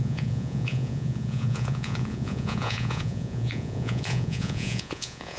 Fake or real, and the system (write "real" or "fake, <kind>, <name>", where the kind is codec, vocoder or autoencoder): fake, vocoder, Vocos